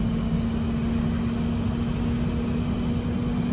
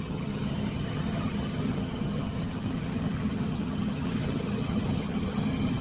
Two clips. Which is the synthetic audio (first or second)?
second